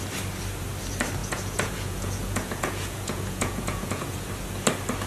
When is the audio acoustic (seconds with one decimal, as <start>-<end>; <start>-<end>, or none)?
0.0-1.2; 4.3-5.1